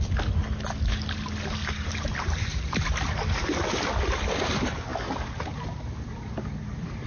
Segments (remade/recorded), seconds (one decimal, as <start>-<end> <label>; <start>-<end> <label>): 0.0-1.6 recorded; 1.6-2.8 remade; 2.8-4.9 recorded; 4.9-7.1 remade